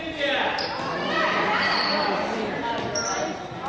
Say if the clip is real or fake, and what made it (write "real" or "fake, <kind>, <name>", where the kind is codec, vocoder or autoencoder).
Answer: fake, vocoder, BigVGAN v2